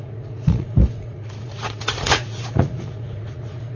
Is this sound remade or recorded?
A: remade